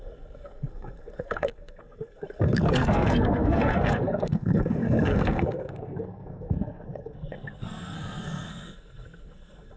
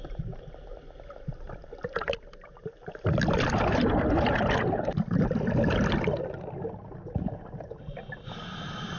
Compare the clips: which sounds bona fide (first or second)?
second